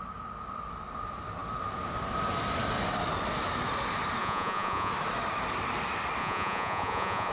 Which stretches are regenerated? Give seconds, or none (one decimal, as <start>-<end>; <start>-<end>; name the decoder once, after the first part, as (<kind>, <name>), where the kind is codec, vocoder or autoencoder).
4.2-4.9 (vocoder, Vocos); 6.2-7.3